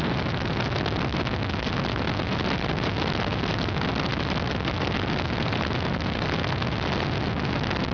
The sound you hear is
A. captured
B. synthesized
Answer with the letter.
A